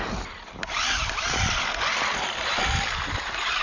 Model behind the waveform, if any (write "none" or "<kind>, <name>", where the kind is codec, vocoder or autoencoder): none